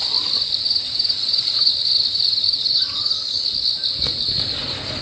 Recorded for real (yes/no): yes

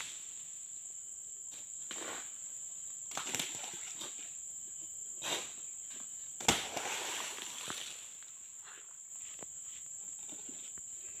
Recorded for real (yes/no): yes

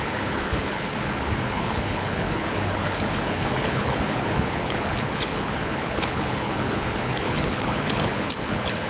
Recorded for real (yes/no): no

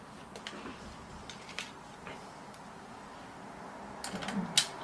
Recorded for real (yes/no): yes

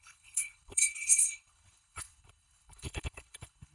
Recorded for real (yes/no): no